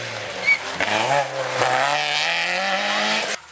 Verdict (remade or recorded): recorded